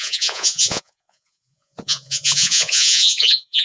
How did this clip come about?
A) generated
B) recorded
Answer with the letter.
A